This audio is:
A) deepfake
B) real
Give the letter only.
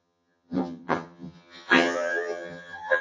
A